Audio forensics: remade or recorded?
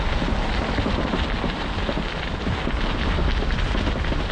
recorded